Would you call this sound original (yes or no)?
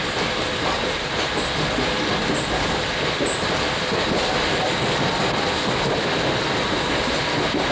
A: yes